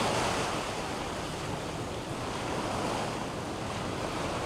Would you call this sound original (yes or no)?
yes